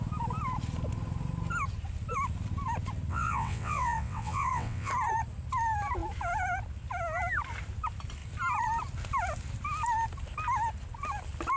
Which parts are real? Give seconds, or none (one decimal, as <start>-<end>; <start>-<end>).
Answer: 0.0-3.1; 4.9-11.6